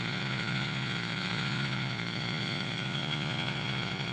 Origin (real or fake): fake